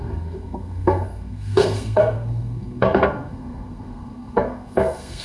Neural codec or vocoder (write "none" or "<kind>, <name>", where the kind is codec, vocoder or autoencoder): codec, SNAC